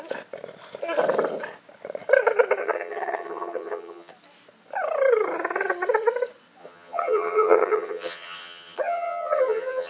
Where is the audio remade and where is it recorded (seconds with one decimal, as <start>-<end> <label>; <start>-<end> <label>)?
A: 0.0-2.6 recorded; 2.6-4.1 remade; 4.1-6.6 recorded; 6.6-9.9 remade